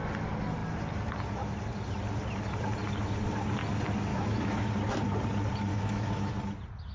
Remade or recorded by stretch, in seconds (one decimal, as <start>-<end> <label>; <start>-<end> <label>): 0.0-4.1 recorded; 4.1-4.7 remade; 4.7-5.7 recorded; 5.7-6.3 remade; 6.3-6.9 recorded